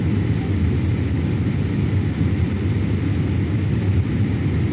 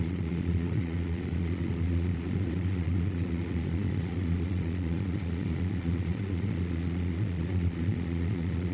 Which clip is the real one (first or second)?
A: first